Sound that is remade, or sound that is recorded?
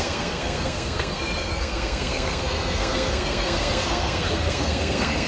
remade